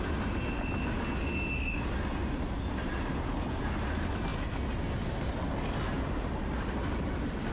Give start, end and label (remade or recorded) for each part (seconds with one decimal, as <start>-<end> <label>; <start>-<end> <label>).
0.0-7.5 recorded